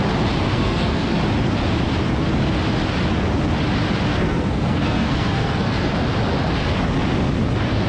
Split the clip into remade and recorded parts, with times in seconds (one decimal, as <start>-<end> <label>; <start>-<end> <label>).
0.0-0.5 recorded; 0.5-1.1 remade; 1.1-4.1 recorded; 4.1-5.9 remade; 5.9-7.9 recorded